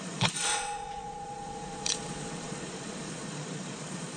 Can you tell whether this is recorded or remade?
remade